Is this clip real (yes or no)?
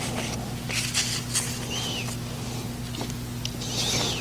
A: yes